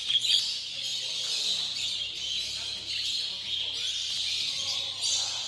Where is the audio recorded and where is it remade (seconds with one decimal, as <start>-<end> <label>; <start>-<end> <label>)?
0.0-0.9 remade; 0.9-4.2 recorded; 4.2-5.5 remade